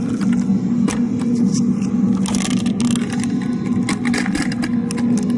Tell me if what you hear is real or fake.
real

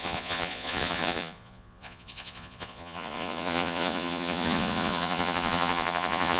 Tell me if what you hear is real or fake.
fake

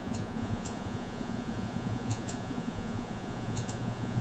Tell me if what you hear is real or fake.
fake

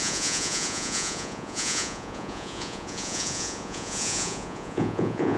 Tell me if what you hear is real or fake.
fake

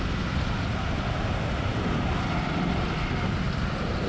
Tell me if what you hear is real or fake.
real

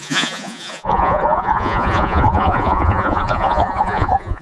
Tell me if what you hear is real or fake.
fake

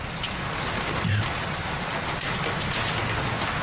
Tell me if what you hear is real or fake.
real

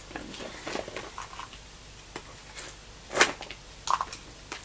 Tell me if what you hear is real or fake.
real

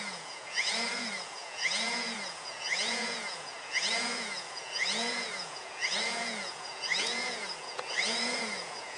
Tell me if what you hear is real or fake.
fake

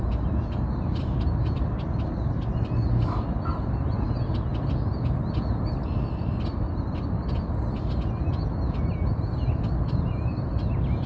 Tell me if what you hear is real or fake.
real